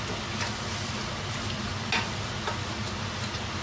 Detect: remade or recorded recorded